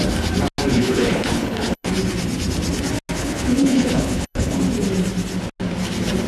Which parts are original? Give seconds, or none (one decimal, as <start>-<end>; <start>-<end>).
0.0-0.7; 1.9-3.2; 4.6-6.3